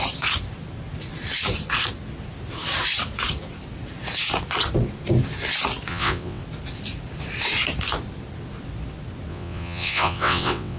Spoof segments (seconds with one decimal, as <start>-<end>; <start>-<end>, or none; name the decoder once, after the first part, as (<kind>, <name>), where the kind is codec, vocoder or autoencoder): 5.9-6.4 (vocoder, WaveNeXt); 9.3-10.8